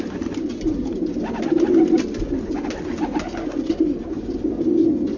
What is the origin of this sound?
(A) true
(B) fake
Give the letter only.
A